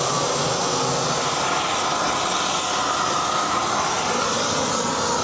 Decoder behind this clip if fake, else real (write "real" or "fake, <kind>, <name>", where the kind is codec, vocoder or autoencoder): real